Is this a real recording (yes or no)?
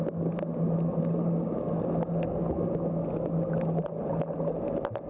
yes